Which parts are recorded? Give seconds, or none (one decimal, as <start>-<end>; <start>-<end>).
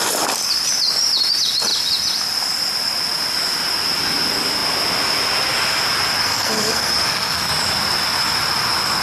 0.0-6.2; 7.5-9.0